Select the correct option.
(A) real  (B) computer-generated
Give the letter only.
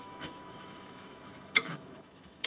B